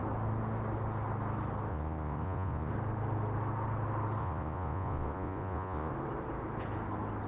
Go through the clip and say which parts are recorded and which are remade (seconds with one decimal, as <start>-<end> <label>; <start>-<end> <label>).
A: 0.0-1.7 recorded; 1.7-2.7 remade; 2.7-4.2 recorded; 4.2-5.9 remade; 5.9-7.3 recorded